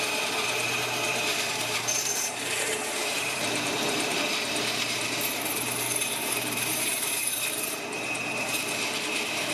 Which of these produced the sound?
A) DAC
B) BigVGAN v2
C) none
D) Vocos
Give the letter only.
B